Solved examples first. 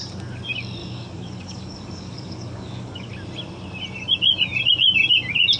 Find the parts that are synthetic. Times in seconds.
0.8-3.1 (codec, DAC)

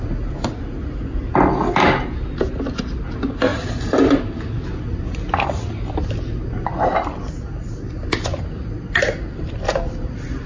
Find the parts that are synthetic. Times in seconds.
none

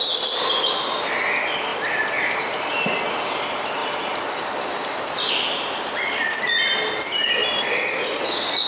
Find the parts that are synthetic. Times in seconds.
1.7-3.0 (vocoder, BigVGAN v2); 3.8-5.3

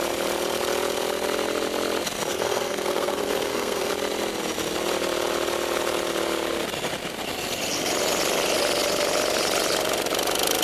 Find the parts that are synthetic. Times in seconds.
2.3-3.9 (codec, SNAC)